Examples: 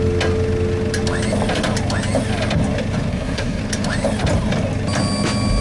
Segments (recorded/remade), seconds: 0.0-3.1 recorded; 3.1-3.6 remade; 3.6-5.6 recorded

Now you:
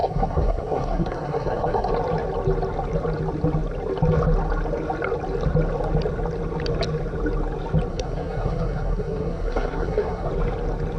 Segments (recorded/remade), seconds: 0.0-1.9 remade; 1.9-7.9 recorded; 7.9-10.3 remade; 10.3-11.0 recorded

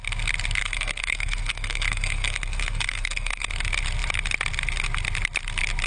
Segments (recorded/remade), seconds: 0.0-0.6 recorded; 0.6-3.5 remade; 3.5-5.9 recorded

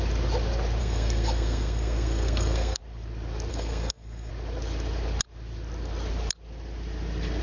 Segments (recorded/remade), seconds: 0.0-0.8 recorded; 0.8-2.8 remade; 2.8-3.5 recorded; 3.5-4.3 remade; 4.3-7.4 recorded

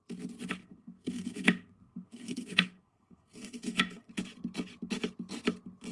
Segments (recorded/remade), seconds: 0.0-0.6 recorded; 0.6-4.1 remade; 4.1-5.9 recorded

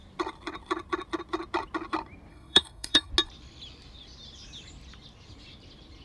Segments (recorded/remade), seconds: 0.0-2.3 recorded; 2.3-3.1 remade; 3.1-6.0 recorded

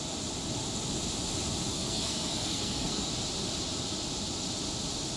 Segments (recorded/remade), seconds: 0.0-1.7 recorded; 1.7-3.1 remade; 3.1-5.2 recorded